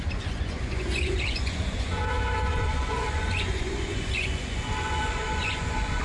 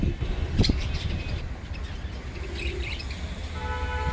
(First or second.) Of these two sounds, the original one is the second